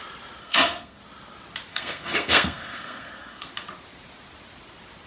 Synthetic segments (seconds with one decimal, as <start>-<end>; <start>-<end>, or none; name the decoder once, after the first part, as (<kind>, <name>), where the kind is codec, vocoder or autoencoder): 0.4-1.0 (codec, SNAC); 1.7-3.5